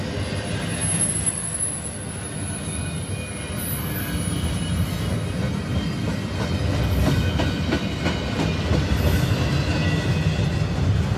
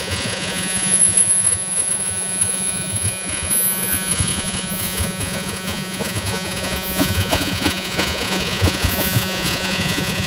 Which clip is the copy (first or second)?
second